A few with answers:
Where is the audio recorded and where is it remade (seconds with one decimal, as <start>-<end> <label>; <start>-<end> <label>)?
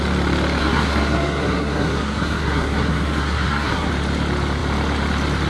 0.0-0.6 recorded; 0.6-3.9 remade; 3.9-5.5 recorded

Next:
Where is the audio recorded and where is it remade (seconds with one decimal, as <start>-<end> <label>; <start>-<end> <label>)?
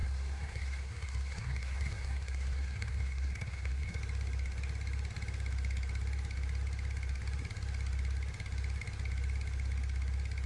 0.0-4.0 remade; 4.0-10.5 recorded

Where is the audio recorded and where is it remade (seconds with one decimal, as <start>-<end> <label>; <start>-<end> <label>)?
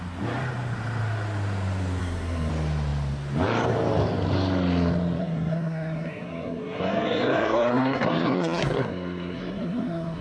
0.0-2.0 recorded; 2.0-2.5 remade; 2.5-5.2 recorded; 5.2-10.2 remade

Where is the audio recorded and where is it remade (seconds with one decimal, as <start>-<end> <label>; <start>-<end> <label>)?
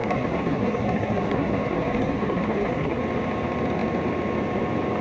0.0-3.0 remade; 3.0-5.0 recorded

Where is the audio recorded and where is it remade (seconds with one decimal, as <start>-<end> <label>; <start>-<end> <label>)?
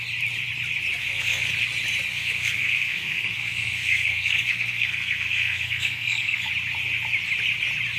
0.0-1.0 recorded; 1.0-1.5 remade; 1.5-2.1 recorded; 2.1-6.5 remade; 6.5-8.0 recorded